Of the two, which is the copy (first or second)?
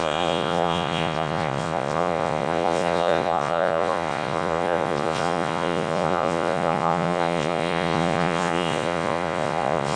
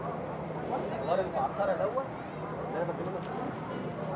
first